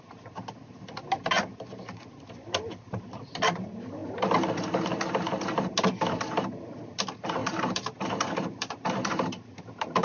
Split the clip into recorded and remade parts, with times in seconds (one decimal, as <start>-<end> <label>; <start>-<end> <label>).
0.0-7.4 recorded; 7.4-9.1 remade; 9.1-10.0 recorded